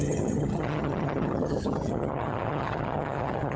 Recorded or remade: remade